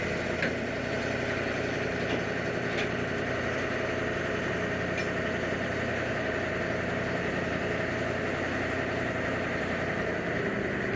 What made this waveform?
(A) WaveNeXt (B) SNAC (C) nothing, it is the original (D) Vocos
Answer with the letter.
C